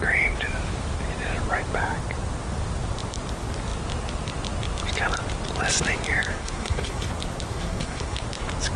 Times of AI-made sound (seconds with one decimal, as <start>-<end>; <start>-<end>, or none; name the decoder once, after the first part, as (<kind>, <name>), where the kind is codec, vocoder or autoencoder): 6.3-7.1 (codec, SNAC); 7.5-8.2